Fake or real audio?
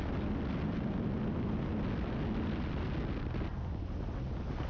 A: real